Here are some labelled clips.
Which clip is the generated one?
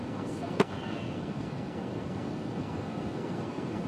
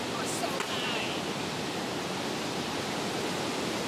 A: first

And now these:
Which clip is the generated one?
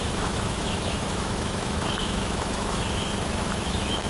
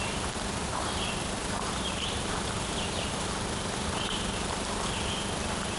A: first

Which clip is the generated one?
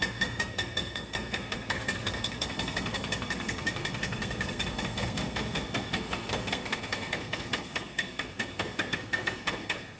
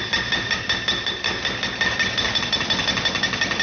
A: first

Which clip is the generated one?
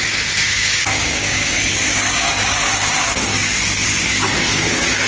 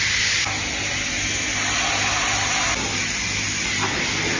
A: first